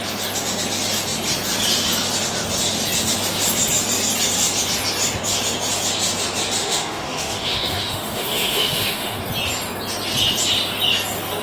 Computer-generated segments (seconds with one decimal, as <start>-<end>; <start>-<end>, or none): 6.6-9.2